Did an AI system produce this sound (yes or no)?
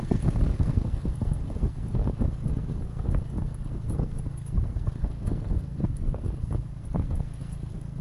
yes